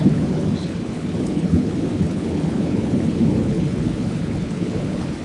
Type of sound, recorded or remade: remade